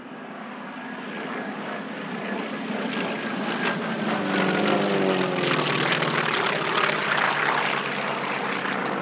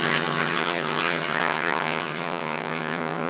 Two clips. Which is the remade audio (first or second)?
second